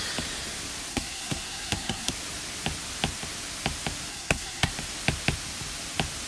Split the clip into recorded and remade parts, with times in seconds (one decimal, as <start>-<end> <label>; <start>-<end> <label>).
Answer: 0.0-0.9 recorded; 0.9-2.1 remade; 2.1-4.1 recorded; 4.1-4.7 remade; 4.7-6.3 recorded